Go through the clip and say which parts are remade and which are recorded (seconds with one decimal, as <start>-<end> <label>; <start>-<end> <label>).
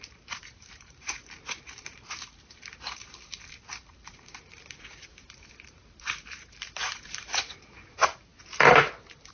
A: 0.0-8.3 remade; 8.3-9.3 recorded